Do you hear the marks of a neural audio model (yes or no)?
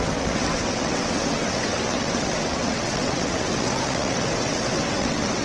yes